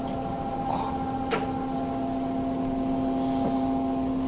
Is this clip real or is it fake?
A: real